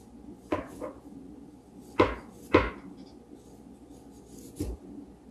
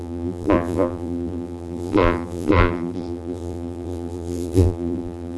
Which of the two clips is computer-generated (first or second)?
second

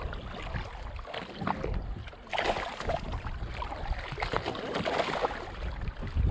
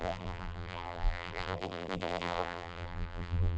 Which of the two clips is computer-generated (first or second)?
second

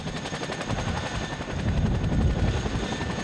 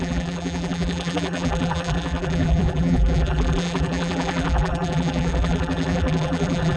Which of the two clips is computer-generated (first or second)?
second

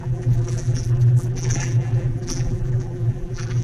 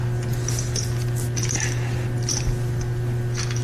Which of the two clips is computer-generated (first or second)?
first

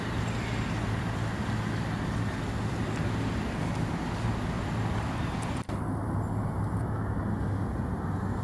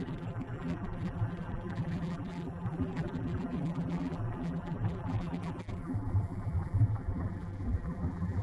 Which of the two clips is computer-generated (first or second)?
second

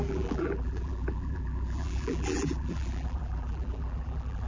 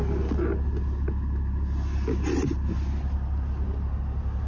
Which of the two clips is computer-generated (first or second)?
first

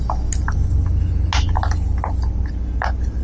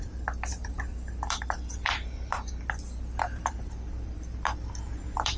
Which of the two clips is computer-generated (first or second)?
second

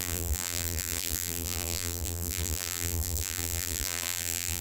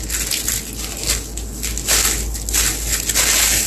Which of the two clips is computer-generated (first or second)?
first